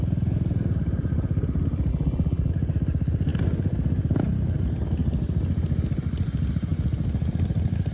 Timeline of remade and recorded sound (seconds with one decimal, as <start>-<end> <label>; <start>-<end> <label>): 0.0-1.9 recorded; 1.9-2.5 remade; 2.5-7.9 recorded